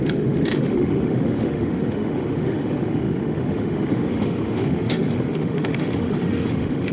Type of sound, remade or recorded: remade